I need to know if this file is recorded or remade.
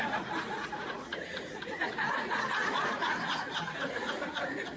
remade